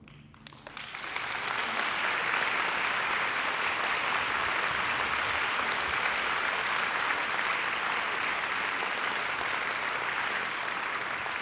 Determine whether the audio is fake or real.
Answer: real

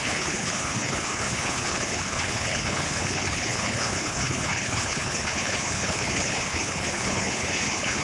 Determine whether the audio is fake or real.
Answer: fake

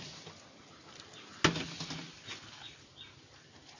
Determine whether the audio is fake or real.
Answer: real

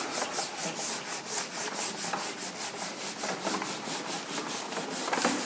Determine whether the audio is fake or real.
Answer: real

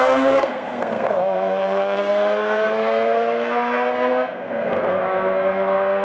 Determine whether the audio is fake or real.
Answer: fake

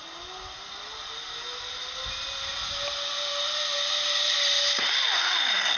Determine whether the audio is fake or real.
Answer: real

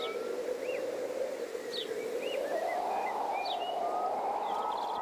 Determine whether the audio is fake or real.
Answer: real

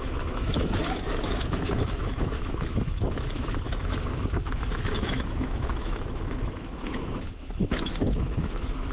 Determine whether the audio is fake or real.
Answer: fake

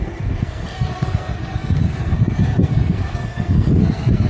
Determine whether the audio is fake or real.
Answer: fake